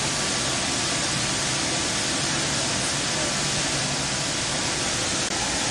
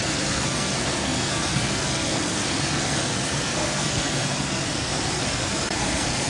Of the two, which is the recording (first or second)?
first